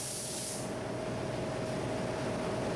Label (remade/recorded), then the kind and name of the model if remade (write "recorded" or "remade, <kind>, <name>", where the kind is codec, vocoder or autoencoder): recorded